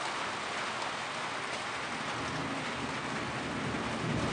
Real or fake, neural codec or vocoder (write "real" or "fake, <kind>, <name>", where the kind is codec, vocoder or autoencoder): real